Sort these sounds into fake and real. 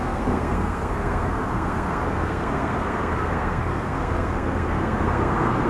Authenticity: fake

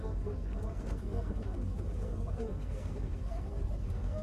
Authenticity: fake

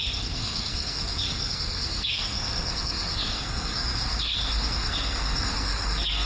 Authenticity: fake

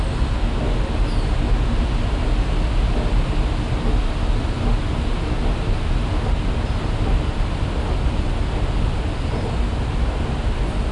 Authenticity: real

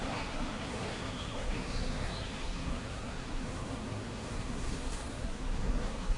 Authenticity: fake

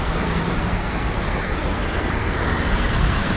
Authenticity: fake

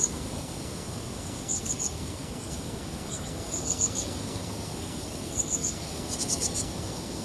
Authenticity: fake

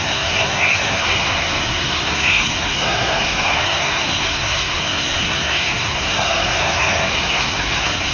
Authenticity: fake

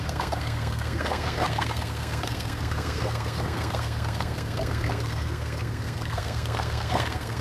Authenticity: fake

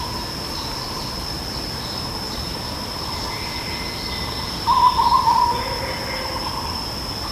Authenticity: real